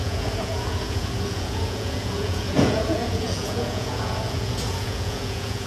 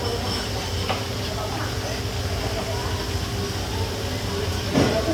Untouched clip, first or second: second